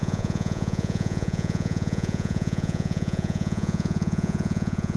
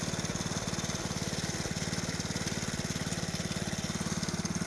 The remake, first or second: first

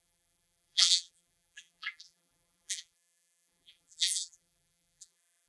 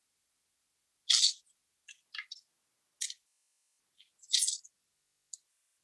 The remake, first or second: first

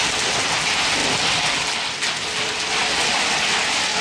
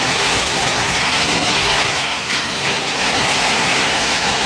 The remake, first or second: second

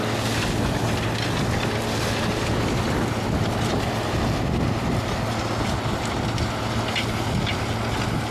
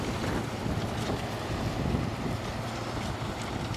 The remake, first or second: second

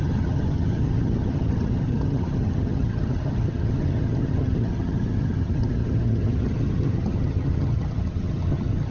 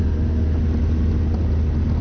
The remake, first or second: first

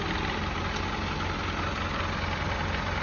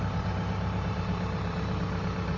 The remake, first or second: second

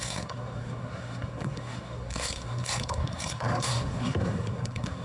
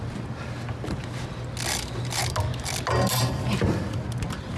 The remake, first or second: first